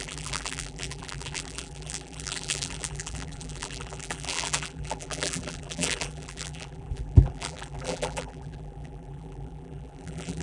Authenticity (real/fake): fake